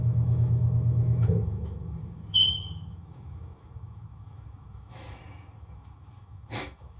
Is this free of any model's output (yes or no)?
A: no